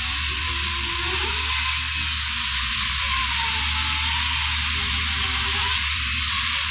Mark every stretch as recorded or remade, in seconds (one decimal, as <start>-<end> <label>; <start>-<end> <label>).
0.0-1.3 remade; 1.3-2.7 recorded; 2.7-3.6 remade; 3.6-4.8 recorded; 4.8-6.7 remade